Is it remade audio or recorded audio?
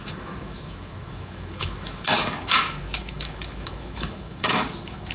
remade